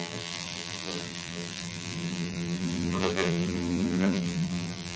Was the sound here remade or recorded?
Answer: remade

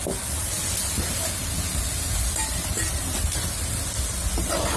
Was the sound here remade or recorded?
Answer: recorded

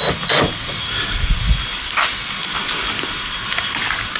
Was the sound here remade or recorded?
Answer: recorded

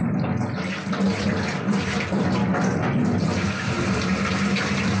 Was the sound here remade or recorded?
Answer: remade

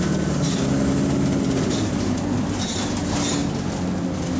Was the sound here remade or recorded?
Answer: recorded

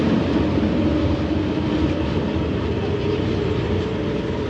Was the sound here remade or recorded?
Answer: recorded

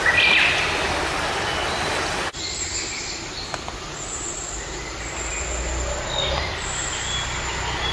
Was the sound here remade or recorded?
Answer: recorded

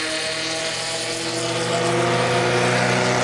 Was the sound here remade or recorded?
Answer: recorded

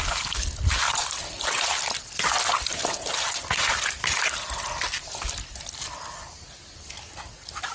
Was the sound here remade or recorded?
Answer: recorded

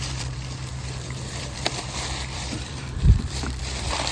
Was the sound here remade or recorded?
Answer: remade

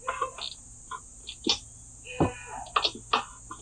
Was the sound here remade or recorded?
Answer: recorded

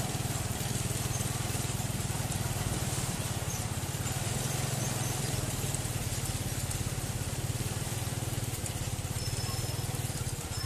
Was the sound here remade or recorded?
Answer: remade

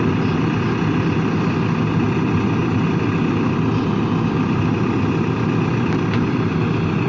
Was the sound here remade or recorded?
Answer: recorded